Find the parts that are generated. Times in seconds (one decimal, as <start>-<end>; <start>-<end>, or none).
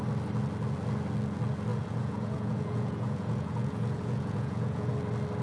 1.7-4.9